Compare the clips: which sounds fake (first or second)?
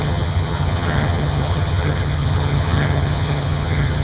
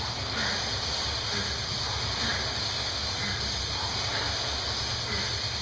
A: first